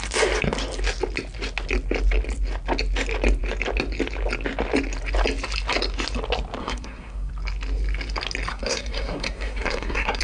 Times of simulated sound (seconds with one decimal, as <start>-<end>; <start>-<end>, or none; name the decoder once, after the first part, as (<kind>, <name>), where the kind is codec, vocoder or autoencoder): 6.6-7.3 (codec, SNAC); 8.5-10.2